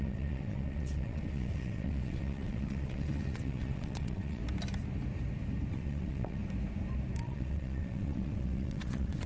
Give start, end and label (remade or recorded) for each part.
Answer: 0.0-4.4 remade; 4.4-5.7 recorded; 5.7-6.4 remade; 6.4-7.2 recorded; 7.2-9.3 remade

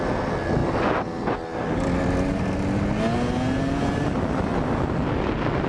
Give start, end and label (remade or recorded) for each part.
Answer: 0.0-5.7 recorded

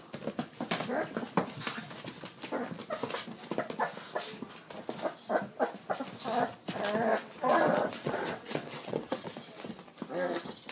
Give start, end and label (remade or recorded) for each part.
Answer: 0.0-7.1 recorded; 7.1-9.7 remade; 9.7-10.7 recorded

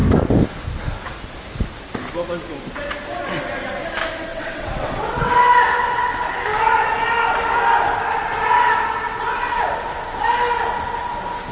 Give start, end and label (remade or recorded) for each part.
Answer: 0.0-4.3 recorded; 4.3-5.3 remade; 5.3-11.5 recorded

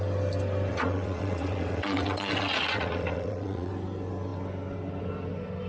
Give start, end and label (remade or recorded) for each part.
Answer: 0.0-0.7 recorded; 0.7-3.7 remade; 3.7-5.7 recorded

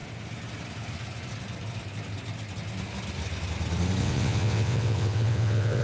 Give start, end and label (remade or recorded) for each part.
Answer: 0.0-4.0 recorded; 4.0-5.8 remade